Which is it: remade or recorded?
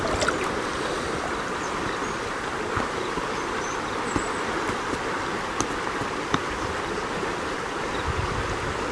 recorded